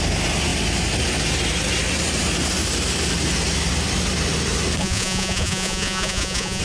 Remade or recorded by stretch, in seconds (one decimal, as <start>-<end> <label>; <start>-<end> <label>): 0.0-4.8 recorded; 4.8-6.6 remade